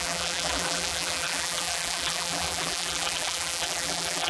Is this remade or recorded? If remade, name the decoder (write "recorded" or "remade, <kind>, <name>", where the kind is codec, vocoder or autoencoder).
remade, vocoder, BigVGAN v2